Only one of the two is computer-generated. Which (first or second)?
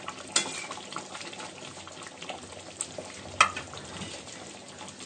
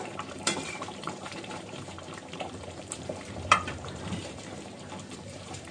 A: second